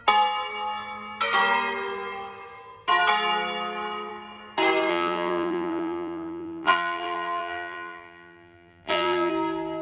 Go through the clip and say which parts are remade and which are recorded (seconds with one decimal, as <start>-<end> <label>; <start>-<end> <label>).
0.0-4.9 recorded; 4.9-9.3 remade; 9.3-9.8 recorded